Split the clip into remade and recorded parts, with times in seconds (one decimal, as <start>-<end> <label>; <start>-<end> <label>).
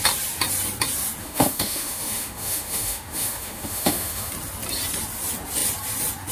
0.0-1.2 recorded; 1.2-4.3 remade; 4.3-6.3 recorded